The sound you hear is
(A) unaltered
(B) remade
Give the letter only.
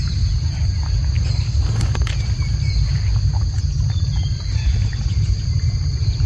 A